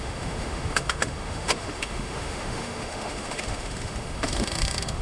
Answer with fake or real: fake